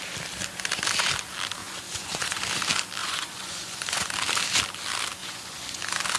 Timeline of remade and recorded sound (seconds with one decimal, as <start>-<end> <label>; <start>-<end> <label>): 0.0-1.6 recorded; 1.6-2.4 remade; 2.4-3.0 recorded; 3.0-4.1 remade; 4.1-5.2 recorded; 5.2-5.8 remade; 5.8-6.2 recorded